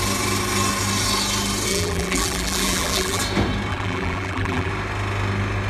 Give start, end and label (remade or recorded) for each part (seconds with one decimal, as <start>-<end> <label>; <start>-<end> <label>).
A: 0.0-1.7 recorded; 1.7-3.2 remade; 3.2-3.7 recorded; 3.7-4.7 remade; 4.7-5.7 recorded